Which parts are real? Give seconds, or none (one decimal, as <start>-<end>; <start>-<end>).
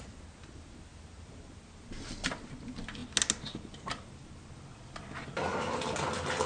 0.0-6.5